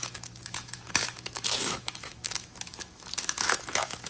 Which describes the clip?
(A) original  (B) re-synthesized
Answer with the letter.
B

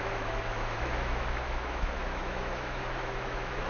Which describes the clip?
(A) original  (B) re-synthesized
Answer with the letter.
B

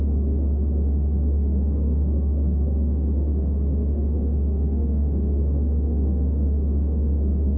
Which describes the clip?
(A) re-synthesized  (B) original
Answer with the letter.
A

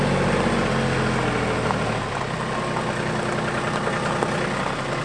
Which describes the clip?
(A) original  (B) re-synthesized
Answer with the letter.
A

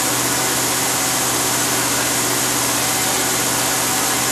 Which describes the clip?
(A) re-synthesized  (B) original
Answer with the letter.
B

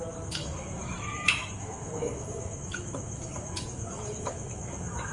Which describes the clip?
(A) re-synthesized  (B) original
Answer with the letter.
A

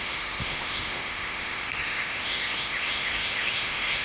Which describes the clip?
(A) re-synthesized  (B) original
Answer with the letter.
A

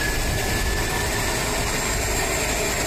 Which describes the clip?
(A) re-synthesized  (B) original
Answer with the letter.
B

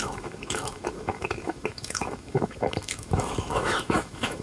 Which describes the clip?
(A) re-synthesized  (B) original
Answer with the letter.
A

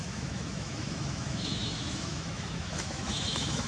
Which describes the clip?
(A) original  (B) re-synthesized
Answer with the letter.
B